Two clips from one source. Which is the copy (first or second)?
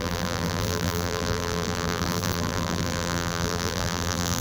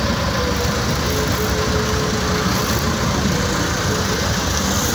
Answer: first